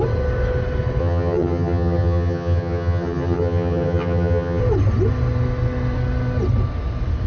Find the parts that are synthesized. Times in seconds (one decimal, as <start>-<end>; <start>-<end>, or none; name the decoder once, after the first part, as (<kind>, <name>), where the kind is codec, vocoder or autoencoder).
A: 1.0-4.6 (vocoder, HiFi-GAN)